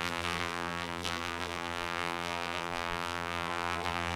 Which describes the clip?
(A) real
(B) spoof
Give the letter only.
B